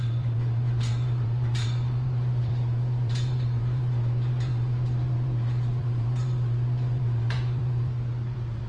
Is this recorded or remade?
remade